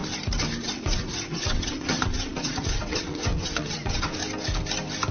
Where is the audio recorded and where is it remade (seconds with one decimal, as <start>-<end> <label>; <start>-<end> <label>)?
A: 0.0-0.6 recorded; 0.6-4.2 remade; 4.2-5.1 recorded